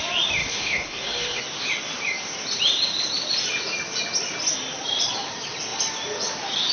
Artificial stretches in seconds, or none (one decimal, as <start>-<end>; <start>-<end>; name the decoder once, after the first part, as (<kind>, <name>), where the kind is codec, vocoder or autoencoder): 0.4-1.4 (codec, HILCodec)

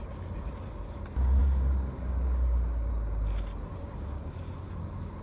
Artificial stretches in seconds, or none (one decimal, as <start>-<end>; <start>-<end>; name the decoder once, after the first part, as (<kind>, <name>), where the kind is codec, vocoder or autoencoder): 1.4-2.9 (codec, DAC); 3.8-4.4

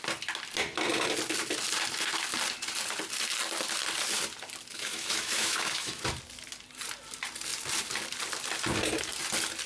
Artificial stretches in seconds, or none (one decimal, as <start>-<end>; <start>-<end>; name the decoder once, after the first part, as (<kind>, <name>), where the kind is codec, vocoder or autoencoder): 4.7-6.0 (autoencoder, DAC-VAE)

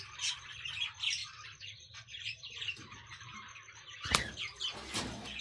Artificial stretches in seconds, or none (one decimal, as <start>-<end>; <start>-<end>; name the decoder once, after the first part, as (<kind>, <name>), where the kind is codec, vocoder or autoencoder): 1.2-4.4 (vocoder, BigVGAN v2)

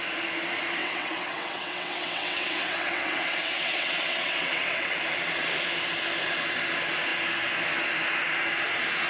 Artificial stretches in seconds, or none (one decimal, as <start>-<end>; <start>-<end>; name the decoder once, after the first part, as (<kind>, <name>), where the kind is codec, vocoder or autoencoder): 0.8-5.0 (vocoder, WaveNeXt)

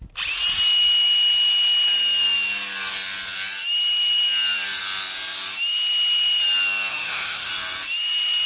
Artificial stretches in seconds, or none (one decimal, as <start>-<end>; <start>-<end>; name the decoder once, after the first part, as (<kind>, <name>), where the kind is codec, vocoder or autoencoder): 6.9-7.5 (autoencoder, DAC-VAE)

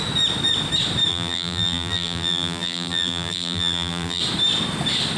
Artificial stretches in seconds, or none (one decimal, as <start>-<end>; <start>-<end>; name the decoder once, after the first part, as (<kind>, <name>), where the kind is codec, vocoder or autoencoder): 1.1-4.2 (vocoder, BigVGAN v2)